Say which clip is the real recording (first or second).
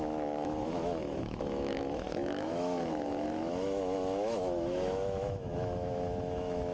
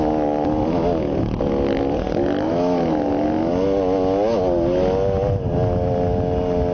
second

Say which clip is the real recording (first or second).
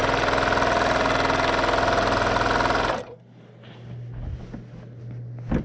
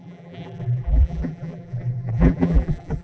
first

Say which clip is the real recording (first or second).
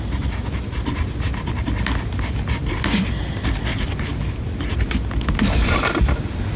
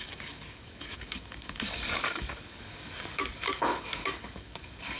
first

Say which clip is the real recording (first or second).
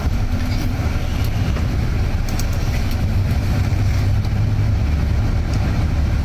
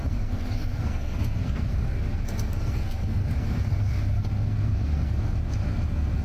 first